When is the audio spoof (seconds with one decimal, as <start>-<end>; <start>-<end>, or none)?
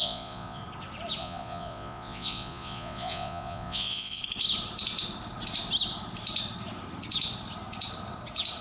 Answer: 0.0-0.6; 1.2-4.2